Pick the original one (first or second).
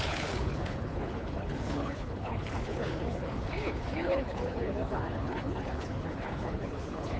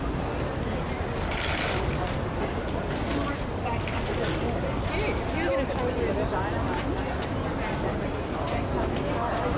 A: second